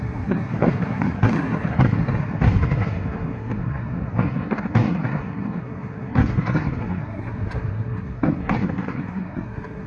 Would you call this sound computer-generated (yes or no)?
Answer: yes